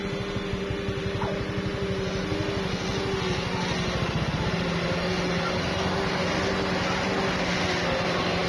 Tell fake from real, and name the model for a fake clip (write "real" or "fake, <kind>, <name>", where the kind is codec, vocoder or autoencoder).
real